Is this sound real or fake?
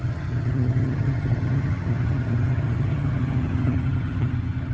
fake